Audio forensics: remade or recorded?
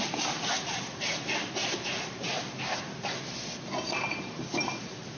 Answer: recorded